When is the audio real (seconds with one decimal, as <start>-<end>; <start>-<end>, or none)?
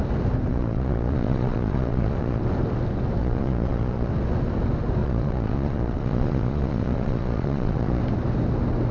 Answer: 0.0-0.5; 2.4-3.2; 4.1-5.0; 8.0-8.9